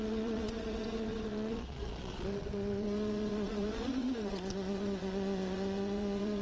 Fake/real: fake